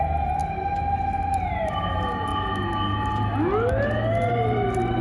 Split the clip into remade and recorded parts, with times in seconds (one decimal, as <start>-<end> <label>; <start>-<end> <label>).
0.0-0.4 remade; 0.4-1.5 recorded; 1.5-2.3 remade; 2.3-4.1 recorded; 4.1-5.0 remade